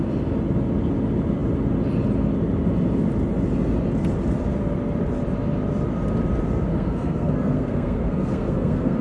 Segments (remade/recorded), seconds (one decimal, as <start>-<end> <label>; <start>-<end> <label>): 0.0-6.7 recorded; 6.7-9.0 remade